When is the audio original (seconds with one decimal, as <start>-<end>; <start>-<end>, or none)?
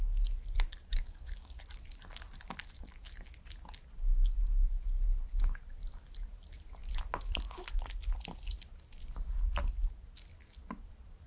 0.0-0.9; 1.6-11.3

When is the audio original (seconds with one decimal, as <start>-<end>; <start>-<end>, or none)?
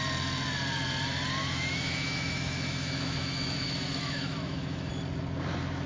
0.0-1.4; 4.9-5.9